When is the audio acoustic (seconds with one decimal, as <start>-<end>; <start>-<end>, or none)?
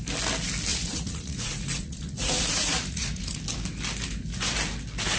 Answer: 0.0-0.7; 3.4-5.2